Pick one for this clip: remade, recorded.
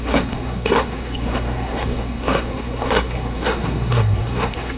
remade